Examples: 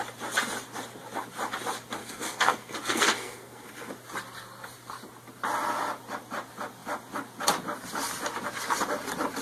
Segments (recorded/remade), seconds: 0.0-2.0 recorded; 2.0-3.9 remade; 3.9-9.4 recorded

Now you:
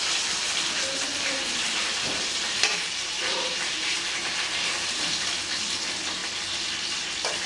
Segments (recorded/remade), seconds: 0.0-1.1 recorded; 1.1-5.0 remade; 5.0-7.5 recorded

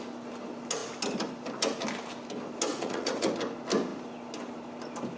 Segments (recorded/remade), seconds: 0.0-2.7 recorded; 2.7-3.3 remade; 3.3-5.2 recorded

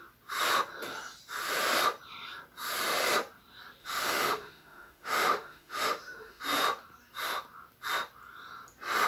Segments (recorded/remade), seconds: 0.0-3.8 recorded; 3.8-6.4 remade; 6.4-9.1 recorded

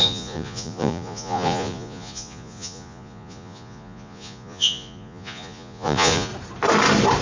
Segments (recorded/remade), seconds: 0.0-6.3 remade; 6.3-7.2 recorded

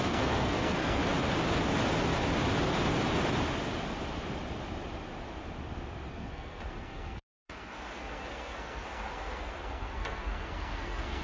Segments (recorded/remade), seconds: 0.0-1.0 remade; 1.0-6.1 recorded; 6.1-11.2 remade